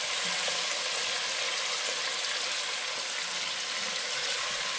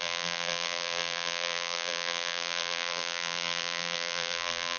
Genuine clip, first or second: first